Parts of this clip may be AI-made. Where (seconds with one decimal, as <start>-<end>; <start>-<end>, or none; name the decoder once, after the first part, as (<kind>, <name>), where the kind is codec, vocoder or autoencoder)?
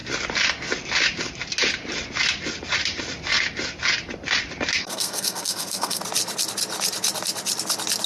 4.8-6.0 (codec, SNAC)